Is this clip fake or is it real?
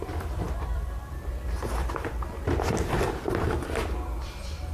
fake